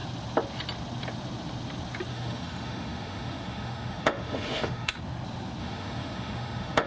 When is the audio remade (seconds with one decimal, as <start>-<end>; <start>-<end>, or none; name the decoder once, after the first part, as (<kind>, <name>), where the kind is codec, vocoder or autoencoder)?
2.1-5.0 (autoencoder, DAC-VAE); 5.6-6.9